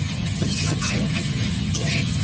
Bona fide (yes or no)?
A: no